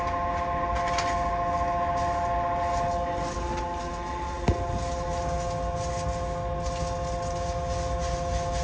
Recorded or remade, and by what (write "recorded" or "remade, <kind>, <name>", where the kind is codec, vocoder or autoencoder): recorded